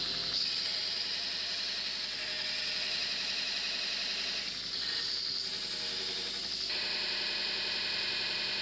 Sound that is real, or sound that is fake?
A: real